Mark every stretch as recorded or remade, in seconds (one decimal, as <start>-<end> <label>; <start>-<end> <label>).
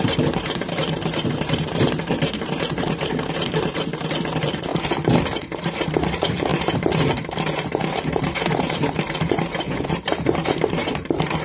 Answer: 0.0-4.7 remade; 4.7-5.4 recorded; 5.4-11.4 remade